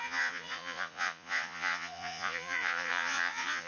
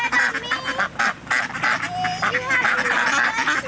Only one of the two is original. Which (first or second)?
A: second